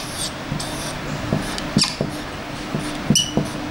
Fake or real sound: real